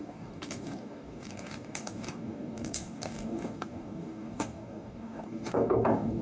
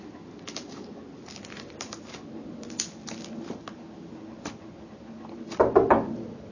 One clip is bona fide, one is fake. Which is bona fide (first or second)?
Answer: second